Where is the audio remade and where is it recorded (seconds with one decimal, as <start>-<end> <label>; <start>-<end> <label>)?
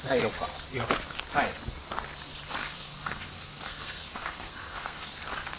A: 0.0-2.6 recorded; 2.6-5.1 remade; 5.1-5.6 recorded